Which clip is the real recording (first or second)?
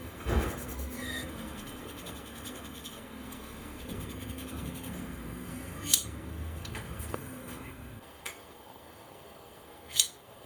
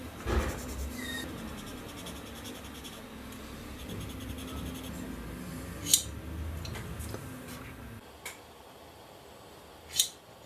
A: second